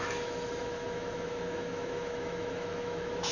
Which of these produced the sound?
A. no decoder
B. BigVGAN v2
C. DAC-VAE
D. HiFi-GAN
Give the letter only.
C